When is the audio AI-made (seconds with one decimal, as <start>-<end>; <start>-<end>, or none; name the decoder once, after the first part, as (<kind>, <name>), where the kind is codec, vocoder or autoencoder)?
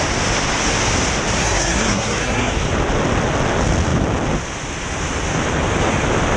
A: 1.4-2.5 (codec, SNAC)